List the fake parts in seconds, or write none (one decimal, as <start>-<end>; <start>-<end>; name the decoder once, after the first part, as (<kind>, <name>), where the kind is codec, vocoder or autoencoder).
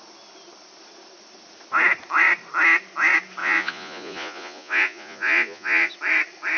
3.4-5.9 (vocoder, Vocos)